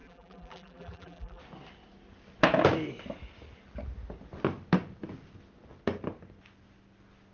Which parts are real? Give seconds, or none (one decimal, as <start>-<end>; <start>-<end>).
1.4-7.3